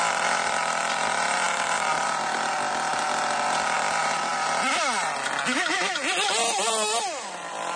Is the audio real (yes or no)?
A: yes